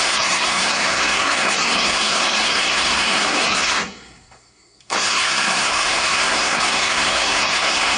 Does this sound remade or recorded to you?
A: remade